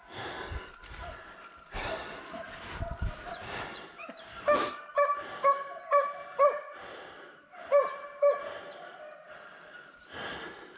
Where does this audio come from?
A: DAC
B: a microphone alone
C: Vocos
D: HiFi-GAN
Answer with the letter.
B